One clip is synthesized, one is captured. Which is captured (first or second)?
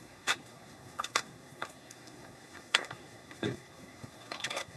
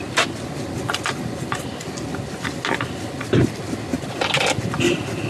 second